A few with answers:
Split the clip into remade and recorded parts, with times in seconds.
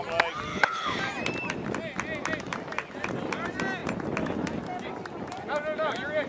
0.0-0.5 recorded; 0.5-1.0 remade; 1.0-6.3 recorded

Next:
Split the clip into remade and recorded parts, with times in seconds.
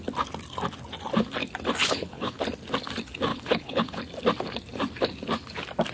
0.0-1.8 recorded; 1.8-2.4 remade; 2.4-3.3 recorded; 3.3-4.0 remade; 4.0-5.9 recorded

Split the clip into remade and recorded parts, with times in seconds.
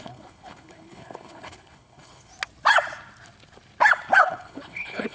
0.0-2.3 remade; 2.3-4.2 recorded; 4.2-5.1 remade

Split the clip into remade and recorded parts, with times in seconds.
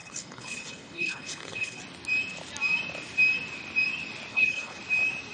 0.0-1.8 remade; 1.8-4.3 recorded; 4.3-4.8 remade; 4.8-5.3 recorded